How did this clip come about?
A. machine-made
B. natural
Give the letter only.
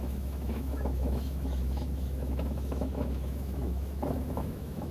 A